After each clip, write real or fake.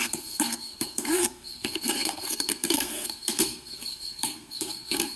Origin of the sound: fake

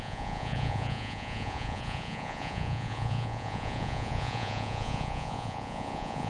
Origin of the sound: fake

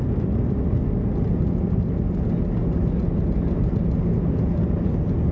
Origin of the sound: real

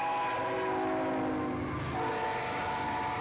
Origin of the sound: real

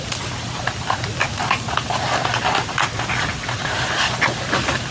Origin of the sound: real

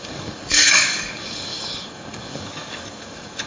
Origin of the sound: fake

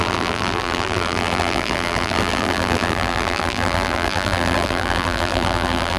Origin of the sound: fake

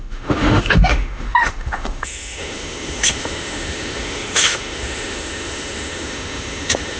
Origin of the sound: fake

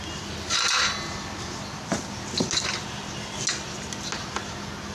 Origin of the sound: real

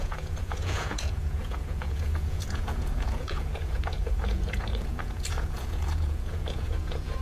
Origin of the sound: fake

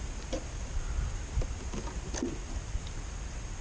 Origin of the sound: real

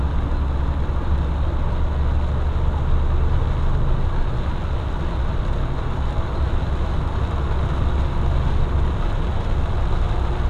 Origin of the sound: real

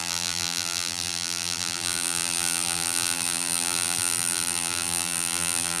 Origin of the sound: fake